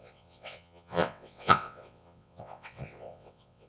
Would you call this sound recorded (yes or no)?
no